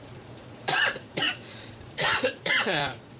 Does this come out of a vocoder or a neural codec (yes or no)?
yes